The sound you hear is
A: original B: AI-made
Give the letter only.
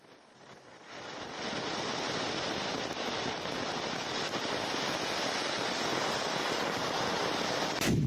A